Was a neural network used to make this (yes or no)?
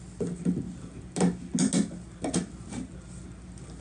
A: no